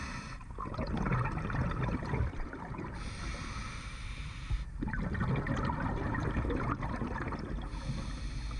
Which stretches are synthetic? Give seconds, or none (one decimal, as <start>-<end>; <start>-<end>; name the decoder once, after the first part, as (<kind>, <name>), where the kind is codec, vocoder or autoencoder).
1.6-3.1 (vocoder, BigVGAN v2)